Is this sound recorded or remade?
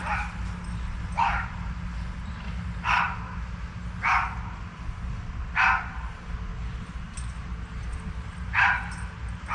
recorded